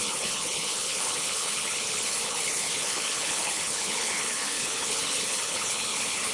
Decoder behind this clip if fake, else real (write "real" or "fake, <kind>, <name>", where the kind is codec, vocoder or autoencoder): fake, codec, HILCodec